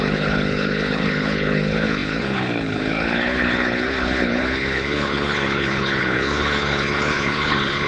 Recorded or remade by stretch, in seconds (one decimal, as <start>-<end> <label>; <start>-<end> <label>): 0.0-7.9 remade